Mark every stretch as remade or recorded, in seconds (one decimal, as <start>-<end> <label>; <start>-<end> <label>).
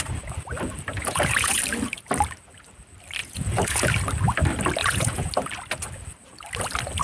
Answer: 0.0-0.9 recorded; 0.9-1.6 remade; 1.6-3.2 recorded; 3.2-3.9 remade; 3.9-4.8 recorded; 4.8-5.3 remade; 5.3-7.0 recorded